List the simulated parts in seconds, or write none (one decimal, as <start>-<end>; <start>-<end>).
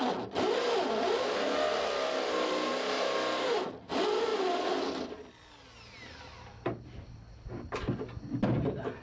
none